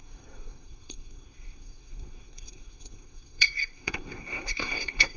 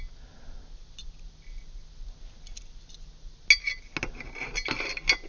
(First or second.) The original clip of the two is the second